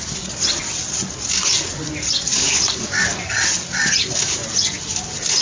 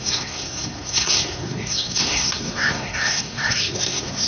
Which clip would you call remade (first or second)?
second